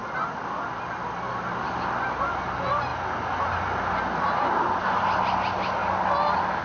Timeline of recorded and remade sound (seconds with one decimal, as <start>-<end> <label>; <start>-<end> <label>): 0.0-6.6 recorded

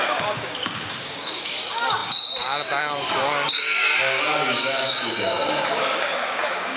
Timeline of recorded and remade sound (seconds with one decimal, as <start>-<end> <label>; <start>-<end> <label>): 0.0-6.8 remade

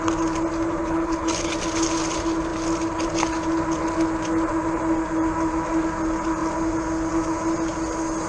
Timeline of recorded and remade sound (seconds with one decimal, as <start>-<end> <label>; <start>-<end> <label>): 0.0-0.8 recorded; 0.8-1.5 remade; 1.5-8.3 recorded

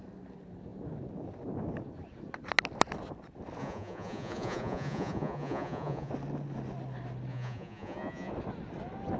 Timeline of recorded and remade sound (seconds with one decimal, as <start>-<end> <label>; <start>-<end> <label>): 0.0-3.6 recorded; 3.6-6.1 remade; 6.1-7.3 recorded; 7.3-8.3 remade; 8.3-9.2 recorded

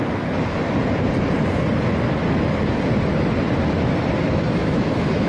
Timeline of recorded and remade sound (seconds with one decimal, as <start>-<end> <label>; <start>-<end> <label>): 0.0-4.6 recorded; 4.6-5.3 remade

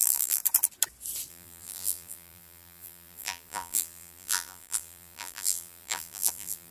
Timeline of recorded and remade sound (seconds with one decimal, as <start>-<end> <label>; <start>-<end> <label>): 0.0-0.4 remade; 0.4-1.3 recorded; 1.3-6.7 remade